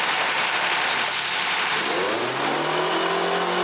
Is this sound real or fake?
real